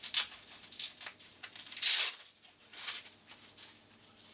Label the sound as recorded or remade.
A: recorded